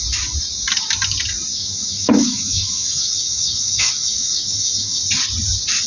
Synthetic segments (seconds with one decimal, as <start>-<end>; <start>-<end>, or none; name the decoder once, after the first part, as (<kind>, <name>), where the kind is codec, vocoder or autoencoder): 1.5-5.0 (autoencoder, DAC-VAE)